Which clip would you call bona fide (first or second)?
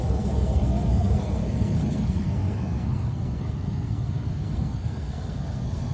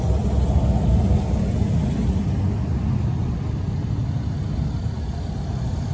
second